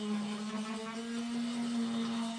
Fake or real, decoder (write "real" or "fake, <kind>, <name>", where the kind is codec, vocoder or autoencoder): real